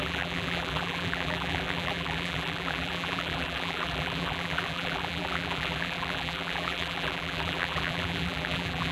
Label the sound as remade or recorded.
remade